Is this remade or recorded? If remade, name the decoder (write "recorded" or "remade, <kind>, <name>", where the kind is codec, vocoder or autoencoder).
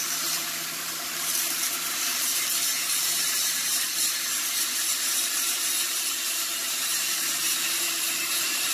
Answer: remade, vocoder, BigVGAN v2